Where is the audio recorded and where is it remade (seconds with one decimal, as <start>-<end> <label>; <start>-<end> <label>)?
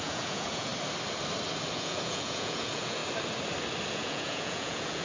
0.0-0.7 remade; 0.7-1.7 recorded; 1.7-3.0 remade; 3.0-3.9 recorded; 3.9-5.0 remade